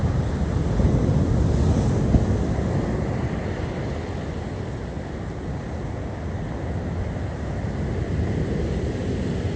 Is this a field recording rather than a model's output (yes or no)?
yes